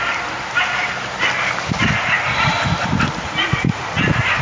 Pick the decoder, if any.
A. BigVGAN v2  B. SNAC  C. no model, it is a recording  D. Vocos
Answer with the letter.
C